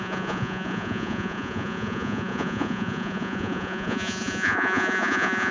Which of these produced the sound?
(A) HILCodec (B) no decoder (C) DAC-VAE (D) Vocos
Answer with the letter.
D